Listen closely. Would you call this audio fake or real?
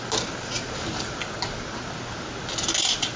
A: real